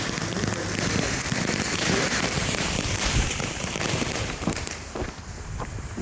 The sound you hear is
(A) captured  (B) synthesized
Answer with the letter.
B